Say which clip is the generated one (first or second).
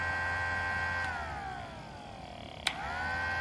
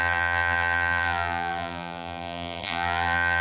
second